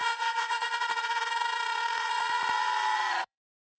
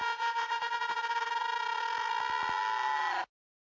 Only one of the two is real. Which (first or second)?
second